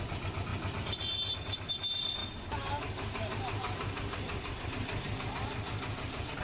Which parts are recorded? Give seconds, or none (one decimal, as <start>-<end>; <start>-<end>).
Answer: 0.0-6.4